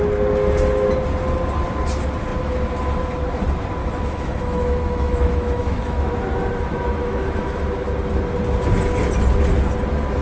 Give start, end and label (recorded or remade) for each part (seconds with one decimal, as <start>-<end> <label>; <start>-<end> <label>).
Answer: 0.0-3.8 recorded; 3.8-6.1 remade; 6.1-7.0 recorded; 7.0-7.9 remade; 7.9-10.2 recorded